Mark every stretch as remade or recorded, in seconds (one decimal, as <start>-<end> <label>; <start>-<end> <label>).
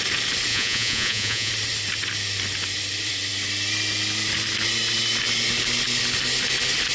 0.0-0.5 recorded; 0.5-1.5 remade; 1.5-6.9 recorded